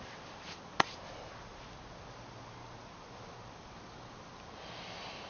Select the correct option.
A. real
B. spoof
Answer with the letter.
A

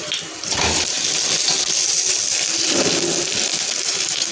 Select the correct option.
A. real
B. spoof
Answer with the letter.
A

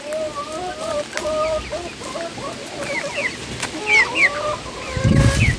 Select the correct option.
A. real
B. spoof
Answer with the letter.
A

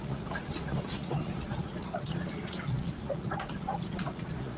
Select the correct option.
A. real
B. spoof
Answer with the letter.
B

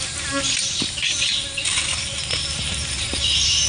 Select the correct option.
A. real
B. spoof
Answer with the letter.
A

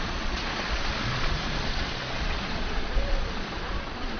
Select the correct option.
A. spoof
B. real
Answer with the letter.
A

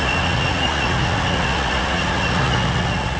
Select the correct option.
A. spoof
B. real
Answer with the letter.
A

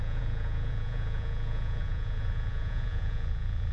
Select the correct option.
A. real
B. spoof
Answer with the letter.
B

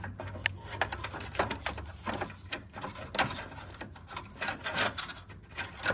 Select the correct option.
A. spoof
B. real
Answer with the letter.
B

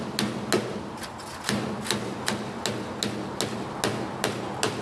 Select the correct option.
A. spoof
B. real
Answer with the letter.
B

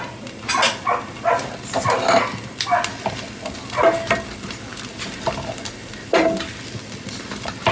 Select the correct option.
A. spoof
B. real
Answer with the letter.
B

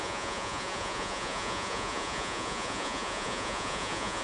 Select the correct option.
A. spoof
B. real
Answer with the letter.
A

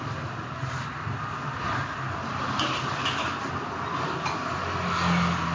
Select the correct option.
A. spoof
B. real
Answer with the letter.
B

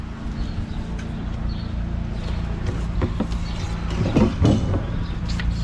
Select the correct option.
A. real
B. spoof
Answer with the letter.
A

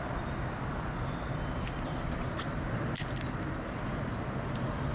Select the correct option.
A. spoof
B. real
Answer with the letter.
B